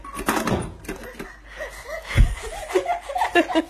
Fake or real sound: real